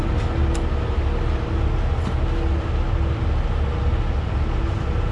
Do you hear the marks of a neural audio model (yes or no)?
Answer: no